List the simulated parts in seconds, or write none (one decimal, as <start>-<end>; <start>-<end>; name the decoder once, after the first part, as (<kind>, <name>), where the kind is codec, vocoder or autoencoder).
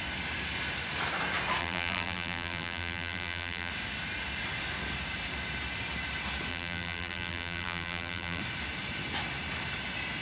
1.6-3.7 (vocoder, BigVGAN v2); 6.5-8.4